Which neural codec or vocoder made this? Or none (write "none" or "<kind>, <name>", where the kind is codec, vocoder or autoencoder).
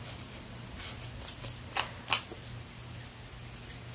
none